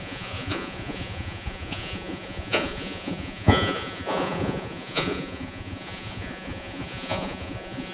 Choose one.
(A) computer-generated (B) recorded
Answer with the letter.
A